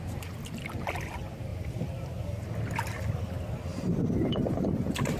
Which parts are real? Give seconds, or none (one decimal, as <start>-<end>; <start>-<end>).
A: 0.0-3.7